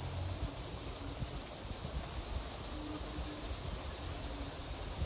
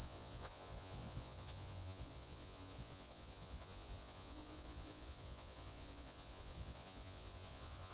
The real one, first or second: first